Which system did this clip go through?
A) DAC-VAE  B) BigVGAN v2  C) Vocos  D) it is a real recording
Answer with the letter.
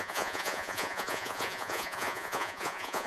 C